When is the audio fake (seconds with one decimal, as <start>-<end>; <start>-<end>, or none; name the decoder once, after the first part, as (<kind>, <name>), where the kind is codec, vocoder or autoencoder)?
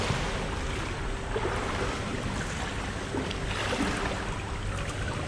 none